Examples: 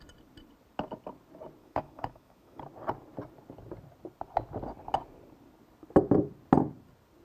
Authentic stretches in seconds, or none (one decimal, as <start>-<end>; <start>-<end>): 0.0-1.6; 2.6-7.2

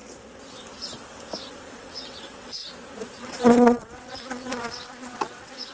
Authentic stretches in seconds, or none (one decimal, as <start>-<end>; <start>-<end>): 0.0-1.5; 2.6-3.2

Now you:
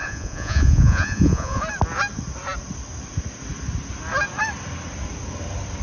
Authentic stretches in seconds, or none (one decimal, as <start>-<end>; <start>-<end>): 1.6-5.8

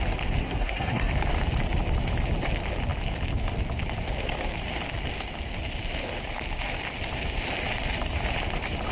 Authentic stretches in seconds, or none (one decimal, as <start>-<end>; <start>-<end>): 0.0-0.4; 1.1-8.9